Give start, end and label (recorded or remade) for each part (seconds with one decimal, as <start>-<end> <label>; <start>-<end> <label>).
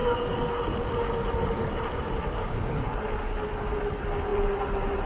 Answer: 0.0-5.1 recorded